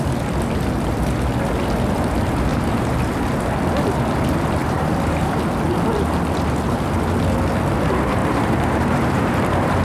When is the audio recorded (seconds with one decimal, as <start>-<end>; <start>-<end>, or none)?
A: 0.0-2.5; 3.0-4.6; 5.4-8.2